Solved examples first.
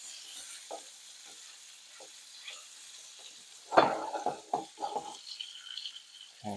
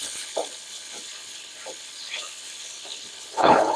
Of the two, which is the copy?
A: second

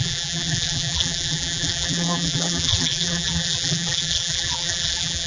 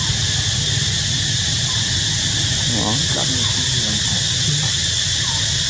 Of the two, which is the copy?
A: first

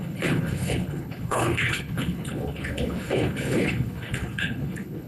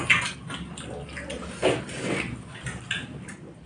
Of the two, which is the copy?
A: first